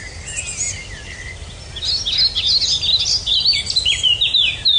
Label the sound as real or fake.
real